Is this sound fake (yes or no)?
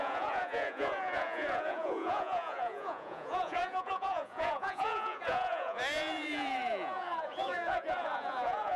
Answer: yes